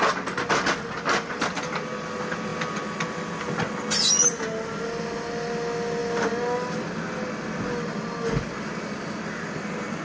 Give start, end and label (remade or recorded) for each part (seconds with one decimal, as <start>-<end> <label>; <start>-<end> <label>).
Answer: 0.0-10.0 recorded